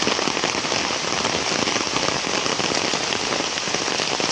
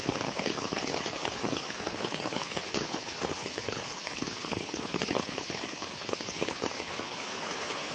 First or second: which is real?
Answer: first